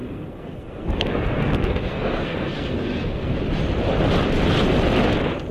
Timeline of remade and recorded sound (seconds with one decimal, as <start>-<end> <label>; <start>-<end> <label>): 0.0-3.3 remade; 3.3-5.5 recorded